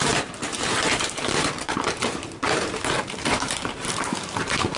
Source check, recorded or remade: remade